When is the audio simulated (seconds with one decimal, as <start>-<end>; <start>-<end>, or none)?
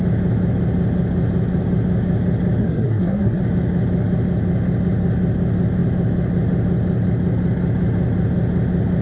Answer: 2.6-3.4